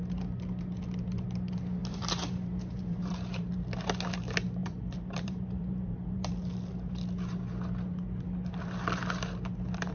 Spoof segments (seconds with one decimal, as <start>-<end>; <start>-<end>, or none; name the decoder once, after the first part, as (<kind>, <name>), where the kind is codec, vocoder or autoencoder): 1.8-3.5 (vocoder, BigVGAN v2); 4.6-6.3